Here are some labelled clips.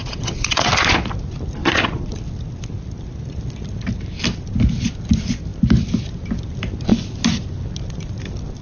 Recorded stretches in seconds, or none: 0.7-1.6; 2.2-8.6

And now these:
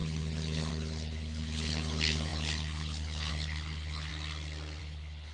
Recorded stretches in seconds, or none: 4.1-4.8

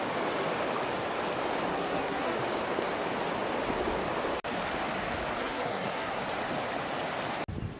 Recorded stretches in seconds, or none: 0.0-1.7; 2.4-5.4; 6.2-7.8

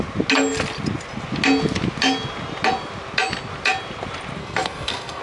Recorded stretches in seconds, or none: 0.0-4.4

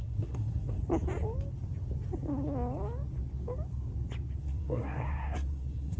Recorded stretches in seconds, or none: 0.8-4.4

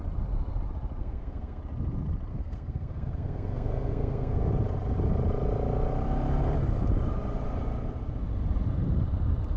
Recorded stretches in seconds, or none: 0.0-1.0; 1.6-2.3; 4.5-9.6

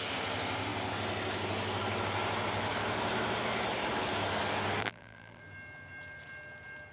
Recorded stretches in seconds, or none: 0.0-4.8; 5.4-6.9

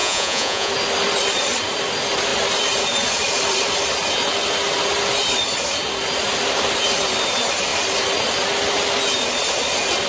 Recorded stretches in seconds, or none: 0.7-10.1